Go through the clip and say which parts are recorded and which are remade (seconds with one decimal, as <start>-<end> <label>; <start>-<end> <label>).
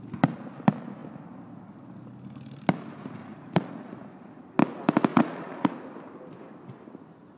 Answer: 0.0-3.2 recorded; 3.2-4.4 remade; 4.4-5.1 recorded; 5.1-5.7 remade; 5.7-7.4 recorded